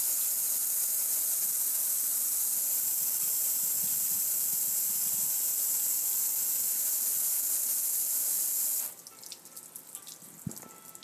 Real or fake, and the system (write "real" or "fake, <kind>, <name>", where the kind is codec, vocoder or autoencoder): real